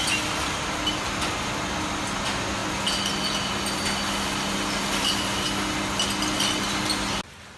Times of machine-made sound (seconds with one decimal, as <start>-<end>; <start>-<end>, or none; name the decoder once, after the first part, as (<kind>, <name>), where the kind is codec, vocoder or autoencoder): none